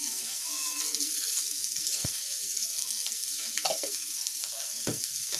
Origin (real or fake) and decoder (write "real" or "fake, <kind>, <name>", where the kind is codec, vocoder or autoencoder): fake, codec, SNAC